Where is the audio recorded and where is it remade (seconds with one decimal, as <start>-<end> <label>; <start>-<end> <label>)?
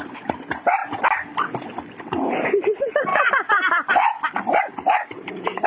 0.0-0.8 remade; 0.8-2.0 recorded; 2.0-3.1 remade; 3.1-4.6 recorded; 4.6-5.7 remade